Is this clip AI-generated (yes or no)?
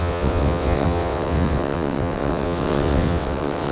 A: yes